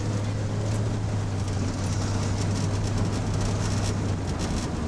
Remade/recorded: recorded